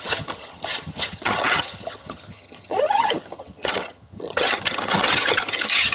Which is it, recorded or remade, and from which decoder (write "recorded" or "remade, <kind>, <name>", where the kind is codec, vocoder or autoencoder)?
remade, vocoder, HiFi-GAN